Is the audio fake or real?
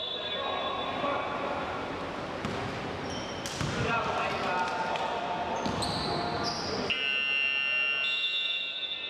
real